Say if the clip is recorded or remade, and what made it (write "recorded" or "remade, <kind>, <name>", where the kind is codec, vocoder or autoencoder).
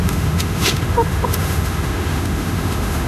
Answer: remade, autoencoder, DAC-VAE